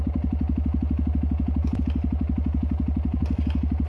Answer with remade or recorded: recorded